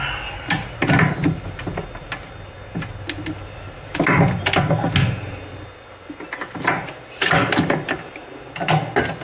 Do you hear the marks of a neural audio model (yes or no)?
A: no